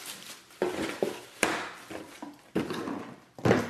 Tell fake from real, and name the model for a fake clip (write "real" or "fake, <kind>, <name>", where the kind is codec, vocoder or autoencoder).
fake, vocoder, BigVGAN v2